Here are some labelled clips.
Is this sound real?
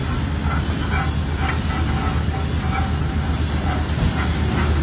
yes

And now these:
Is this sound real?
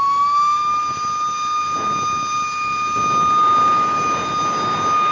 yes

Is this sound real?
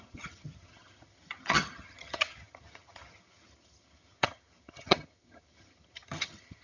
no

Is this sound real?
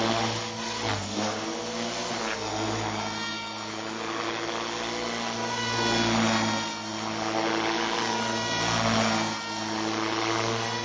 yes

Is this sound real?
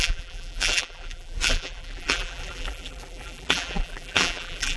no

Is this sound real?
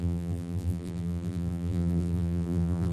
no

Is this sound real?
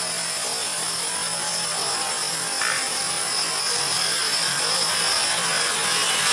yes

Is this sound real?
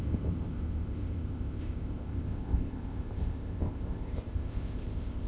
no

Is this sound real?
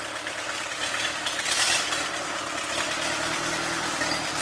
yes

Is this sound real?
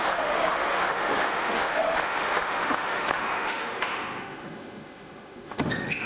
no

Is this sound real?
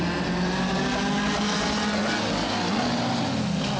yes